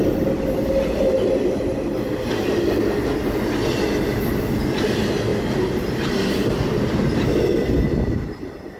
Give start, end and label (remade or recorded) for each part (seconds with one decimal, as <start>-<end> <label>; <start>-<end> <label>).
0.0-8.8 recorded